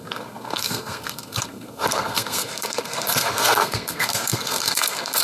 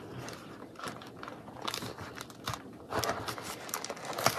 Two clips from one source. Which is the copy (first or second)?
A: first